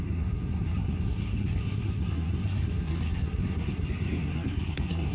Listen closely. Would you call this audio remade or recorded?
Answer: remade